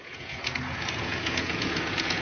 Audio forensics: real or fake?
fake